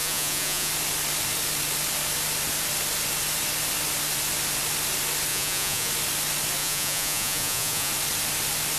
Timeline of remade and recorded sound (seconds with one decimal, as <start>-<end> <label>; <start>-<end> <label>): 0.0-0.7 remade; 0.7-5.3 recorded; 5.3-5.9 remade; 5.9-6.6 recorded; 6.6-7.9 remade; 7.9-8.8 recorded